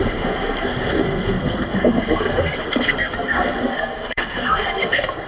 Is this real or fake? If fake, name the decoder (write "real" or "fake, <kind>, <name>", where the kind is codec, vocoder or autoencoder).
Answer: fake, codec, SNAC